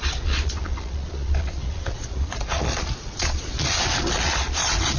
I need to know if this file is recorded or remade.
remade